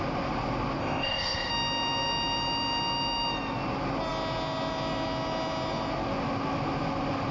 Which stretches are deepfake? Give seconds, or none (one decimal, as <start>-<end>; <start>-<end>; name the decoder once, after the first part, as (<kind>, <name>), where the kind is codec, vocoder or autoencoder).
0.8-1.5 (codec, ZipCodec)